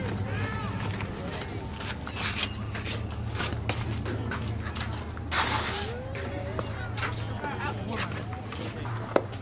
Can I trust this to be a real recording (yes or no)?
yes